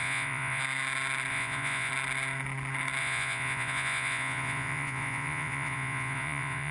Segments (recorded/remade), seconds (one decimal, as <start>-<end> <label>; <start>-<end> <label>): 0.0-0.6 remade; 0.6-1.3 recorded; 1.3-1.9 remade; 1.9-3.0 recorded; 3.0-6.7 remade